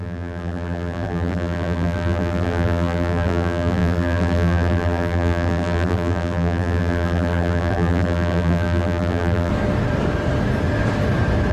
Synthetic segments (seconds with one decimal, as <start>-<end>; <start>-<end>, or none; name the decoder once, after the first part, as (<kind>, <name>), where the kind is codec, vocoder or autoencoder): 0.0-9.5 (vocoder, BigVGAN v2)

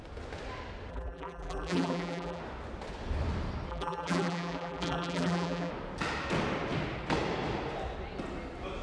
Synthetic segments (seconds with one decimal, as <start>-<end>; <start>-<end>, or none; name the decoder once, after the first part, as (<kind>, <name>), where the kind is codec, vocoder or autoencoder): 0.9-2.4 (vocoder, BigVGAN v2); 3.7-5.7

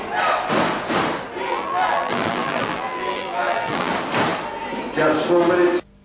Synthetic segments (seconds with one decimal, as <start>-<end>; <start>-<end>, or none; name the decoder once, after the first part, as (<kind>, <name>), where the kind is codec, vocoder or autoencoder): 1.5-3.9 (vocoder, BigVGAN v2)

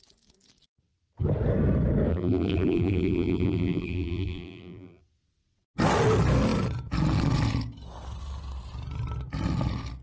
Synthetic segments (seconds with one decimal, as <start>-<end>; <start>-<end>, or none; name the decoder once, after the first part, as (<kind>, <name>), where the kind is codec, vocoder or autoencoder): 2.1-5.0 (vocoder, BigVGAN v2)

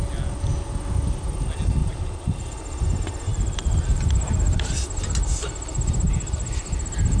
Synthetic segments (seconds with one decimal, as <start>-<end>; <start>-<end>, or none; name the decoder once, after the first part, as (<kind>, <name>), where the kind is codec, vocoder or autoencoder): 1.8-2.6 (vocoder, BigVGAN v2); 3.3-4.7